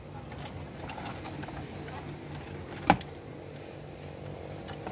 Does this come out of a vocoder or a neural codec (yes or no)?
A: no